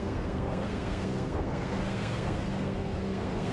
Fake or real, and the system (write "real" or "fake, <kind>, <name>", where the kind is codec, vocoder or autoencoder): fake, codec, SNAC